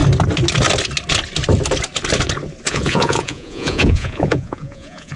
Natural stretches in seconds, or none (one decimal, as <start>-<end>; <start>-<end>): 0.0-2.7